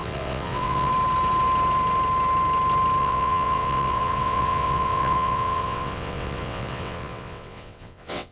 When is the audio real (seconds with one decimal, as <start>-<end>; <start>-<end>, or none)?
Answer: 0.9-3.0